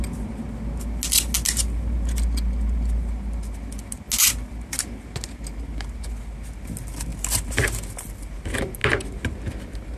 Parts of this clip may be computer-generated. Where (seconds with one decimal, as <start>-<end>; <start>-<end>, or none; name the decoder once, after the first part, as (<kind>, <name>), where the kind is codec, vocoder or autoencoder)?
none